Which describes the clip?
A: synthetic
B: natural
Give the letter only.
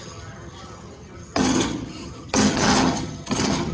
A